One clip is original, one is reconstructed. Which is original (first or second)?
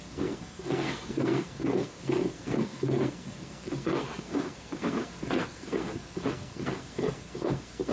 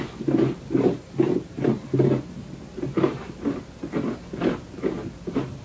second